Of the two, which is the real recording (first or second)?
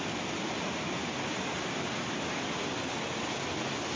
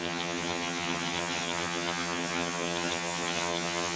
first